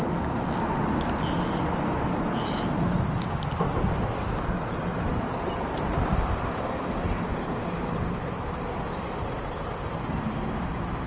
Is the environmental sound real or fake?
real